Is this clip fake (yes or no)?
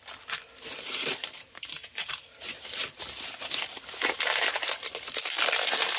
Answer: no